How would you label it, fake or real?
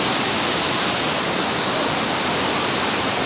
real